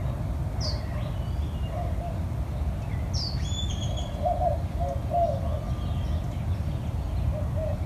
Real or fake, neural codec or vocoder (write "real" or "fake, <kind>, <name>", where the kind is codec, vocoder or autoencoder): real